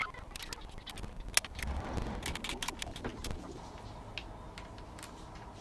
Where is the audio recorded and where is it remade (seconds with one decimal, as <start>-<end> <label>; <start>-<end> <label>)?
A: 0.0-5.6 recorded